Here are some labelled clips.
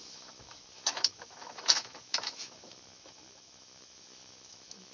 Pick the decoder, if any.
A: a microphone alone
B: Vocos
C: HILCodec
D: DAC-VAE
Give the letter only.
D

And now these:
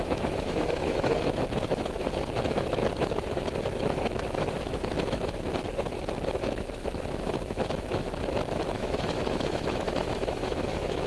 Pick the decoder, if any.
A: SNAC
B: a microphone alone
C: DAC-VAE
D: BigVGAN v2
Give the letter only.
C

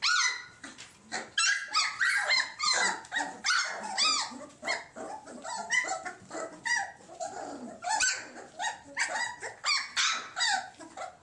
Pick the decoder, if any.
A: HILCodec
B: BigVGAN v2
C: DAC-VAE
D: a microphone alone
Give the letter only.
D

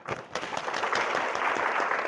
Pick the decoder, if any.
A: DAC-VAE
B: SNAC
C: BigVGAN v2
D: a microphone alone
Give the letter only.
D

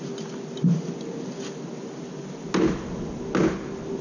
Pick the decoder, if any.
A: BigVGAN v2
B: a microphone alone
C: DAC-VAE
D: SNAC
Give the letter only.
B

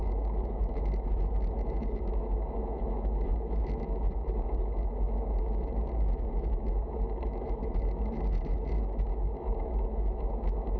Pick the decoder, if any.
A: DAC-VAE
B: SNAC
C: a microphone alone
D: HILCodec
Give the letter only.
A